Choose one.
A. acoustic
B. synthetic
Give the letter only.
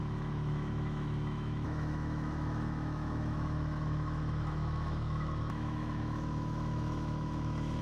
B